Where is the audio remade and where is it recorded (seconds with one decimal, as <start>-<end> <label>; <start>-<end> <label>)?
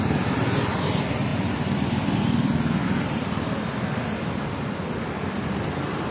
0.0-6.1 recorded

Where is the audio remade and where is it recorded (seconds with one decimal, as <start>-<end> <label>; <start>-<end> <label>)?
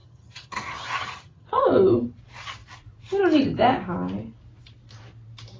0.0-1.6 remade; 1.6-5.6 recorded